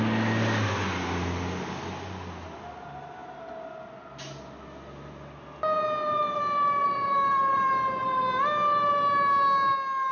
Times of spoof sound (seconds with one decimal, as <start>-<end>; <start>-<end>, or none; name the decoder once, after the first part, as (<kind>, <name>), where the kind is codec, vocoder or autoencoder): 6.8-7.7 (vocoder, BigVGAN v2)